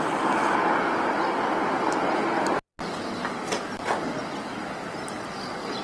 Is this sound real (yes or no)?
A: yes